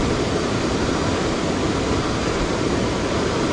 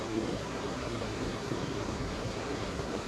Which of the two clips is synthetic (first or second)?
second